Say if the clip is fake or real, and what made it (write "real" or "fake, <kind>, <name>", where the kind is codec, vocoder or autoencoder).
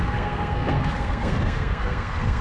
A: fake, codec, SNAC